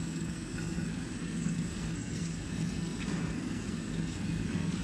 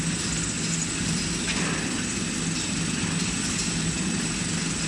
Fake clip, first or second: first